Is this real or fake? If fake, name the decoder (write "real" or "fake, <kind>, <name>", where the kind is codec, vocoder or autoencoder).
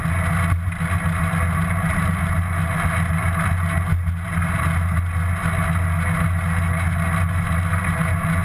real